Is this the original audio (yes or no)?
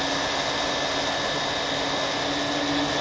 yes